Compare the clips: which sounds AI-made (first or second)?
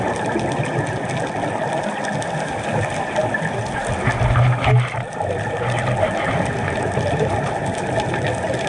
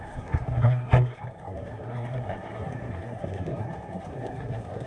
second